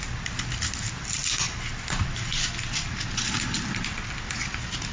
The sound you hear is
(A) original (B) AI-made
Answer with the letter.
A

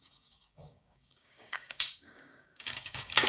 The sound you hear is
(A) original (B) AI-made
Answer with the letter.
B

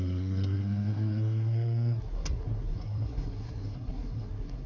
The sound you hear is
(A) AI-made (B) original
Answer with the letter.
A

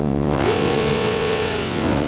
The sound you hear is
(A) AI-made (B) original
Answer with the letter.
A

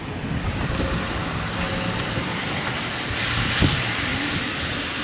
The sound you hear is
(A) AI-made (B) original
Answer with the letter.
A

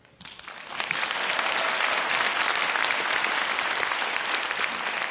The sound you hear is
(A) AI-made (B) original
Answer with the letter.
B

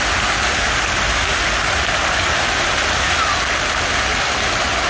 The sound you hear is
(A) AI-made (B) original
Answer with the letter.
B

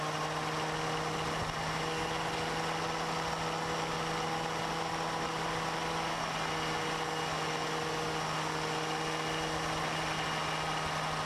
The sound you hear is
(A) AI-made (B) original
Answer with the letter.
B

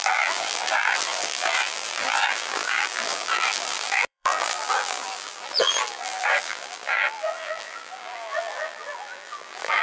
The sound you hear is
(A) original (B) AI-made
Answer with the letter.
B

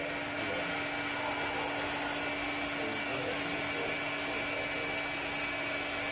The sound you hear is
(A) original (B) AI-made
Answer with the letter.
A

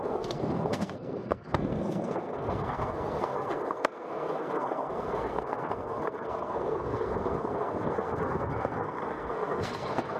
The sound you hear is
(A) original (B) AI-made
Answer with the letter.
B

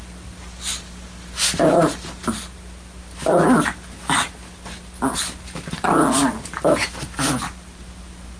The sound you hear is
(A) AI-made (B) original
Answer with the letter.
B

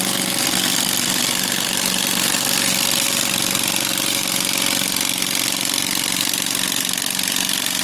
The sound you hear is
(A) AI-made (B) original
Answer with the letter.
B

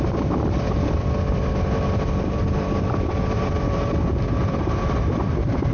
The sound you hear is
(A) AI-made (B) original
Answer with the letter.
A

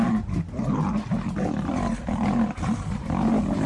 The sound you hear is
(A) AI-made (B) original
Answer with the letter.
B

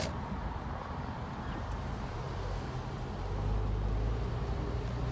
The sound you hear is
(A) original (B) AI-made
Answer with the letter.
A